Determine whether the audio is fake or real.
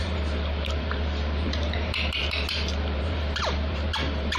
fake